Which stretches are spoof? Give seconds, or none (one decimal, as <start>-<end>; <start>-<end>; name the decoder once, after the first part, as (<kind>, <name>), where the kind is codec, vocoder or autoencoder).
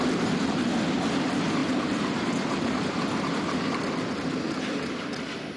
none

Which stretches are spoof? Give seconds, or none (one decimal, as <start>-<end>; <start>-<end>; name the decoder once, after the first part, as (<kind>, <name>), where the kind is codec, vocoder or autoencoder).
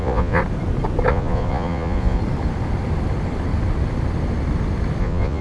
0.0-0.4 (vocoder, Vocos); 1.1-2.2; 5.0-5.4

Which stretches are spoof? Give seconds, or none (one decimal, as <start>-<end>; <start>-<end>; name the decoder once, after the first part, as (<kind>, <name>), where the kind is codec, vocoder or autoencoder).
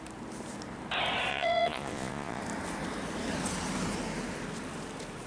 1.3-2.4 (vocoder, Vocos)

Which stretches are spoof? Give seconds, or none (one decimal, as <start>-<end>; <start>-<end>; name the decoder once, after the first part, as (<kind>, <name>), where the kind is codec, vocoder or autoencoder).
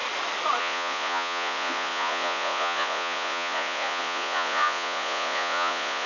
0.6-6.1 (vocoder, Vocos)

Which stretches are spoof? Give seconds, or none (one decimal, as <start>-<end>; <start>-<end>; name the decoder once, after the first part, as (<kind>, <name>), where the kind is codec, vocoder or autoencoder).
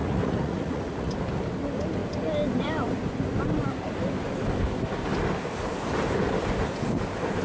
0.0-1.1 (vocoder, Vocos)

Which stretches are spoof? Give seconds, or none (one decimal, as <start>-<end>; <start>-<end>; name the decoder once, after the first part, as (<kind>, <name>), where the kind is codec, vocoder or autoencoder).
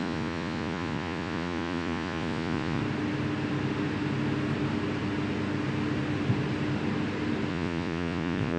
0.0-2.8 (vocoder, Vocos); 7.5-8.6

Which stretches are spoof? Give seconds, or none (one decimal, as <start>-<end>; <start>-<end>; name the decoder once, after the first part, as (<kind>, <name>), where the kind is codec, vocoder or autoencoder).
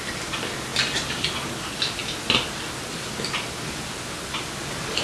none